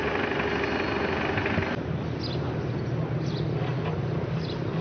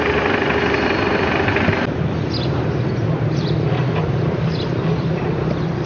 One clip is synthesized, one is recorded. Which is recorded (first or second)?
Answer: first